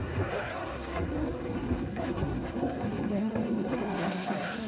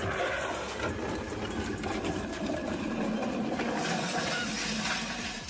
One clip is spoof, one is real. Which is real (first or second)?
second